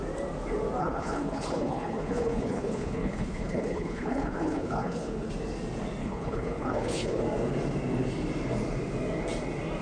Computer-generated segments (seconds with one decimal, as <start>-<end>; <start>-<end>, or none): 0.8-5.3; 6.0-7.2